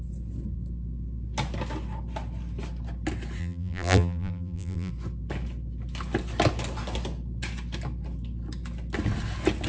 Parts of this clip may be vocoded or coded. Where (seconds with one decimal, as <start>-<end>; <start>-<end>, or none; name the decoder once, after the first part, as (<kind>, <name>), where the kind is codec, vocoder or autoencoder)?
3.4-4.9 (vocoder, BigVGAN v2)